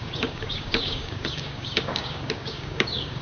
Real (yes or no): no